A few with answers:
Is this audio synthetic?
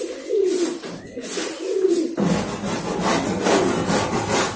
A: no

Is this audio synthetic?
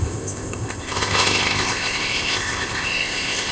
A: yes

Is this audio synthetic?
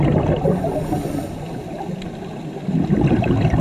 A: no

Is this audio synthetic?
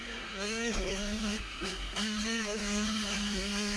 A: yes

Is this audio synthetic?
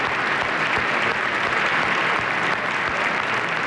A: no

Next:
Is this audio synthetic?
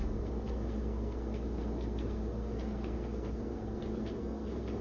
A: yes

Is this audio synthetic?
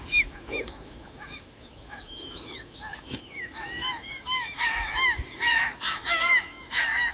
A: yes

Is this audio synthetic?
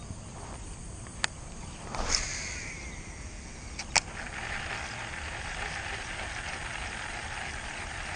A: no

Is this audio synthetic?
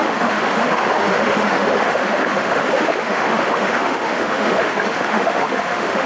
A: yes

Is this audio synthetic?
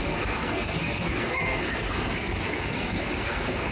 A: yes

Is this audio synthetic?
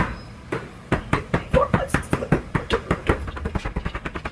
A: yes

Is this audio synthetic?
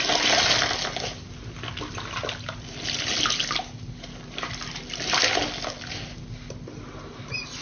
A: no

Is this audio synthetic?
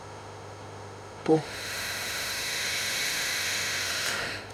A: yes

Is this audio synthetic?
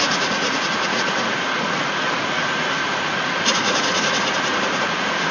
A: yes